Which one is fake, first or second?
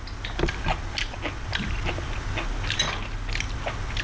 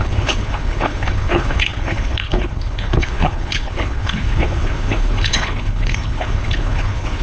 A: second